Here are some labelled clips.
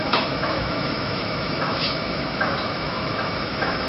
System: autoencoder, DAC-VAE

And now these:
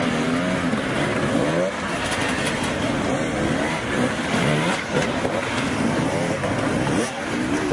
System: none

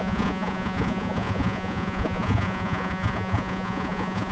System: vocoder, Vocos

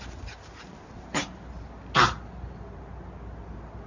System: none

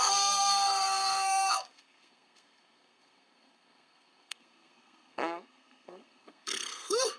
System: codec, SNAC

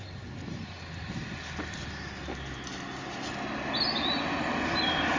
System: none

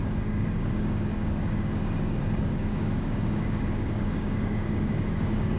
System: codec, DAC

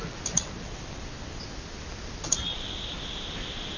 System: none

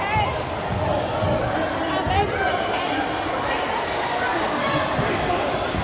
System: none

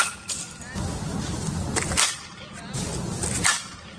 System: none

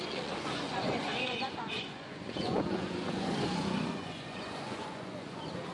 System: vocoder, Vocos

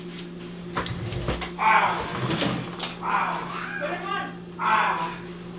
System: none